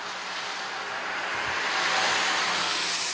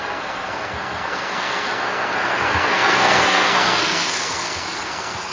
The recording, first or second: first